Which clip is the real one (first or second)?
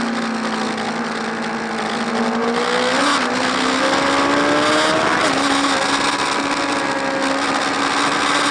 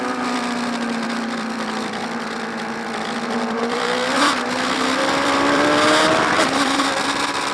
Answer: first